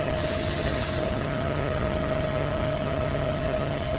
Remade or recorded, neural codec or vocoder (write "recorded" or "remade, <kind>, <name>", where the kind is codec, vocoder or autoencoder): remade, vocoder, HiFi-GAN